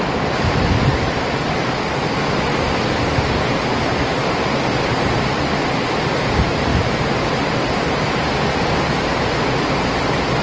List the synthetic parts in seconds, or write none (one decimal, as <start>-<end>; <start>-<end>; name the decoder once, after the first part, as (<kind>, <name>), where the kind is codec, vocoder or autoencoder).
none